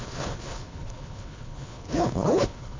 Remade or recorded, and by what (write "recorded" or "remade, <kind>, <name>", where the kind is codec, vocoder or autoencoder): remade, codec, HILCodec